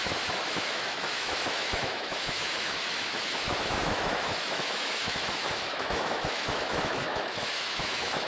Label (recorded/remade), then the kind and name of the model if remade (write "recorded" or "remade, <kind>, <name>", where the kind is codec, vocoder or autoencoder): remade, autoencoder, DAC-VAE